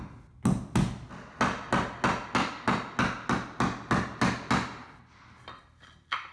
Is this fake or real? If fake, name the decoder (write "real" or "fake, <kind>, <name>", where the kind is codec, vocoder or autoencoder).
real